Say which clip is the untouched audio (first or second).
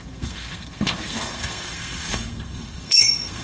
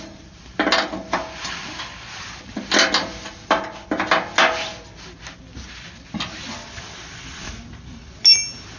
second